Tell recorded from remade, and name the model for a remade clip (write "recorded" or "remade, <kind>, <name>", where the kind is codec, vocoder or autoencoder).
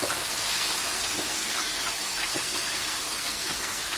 remade, codec, SNAC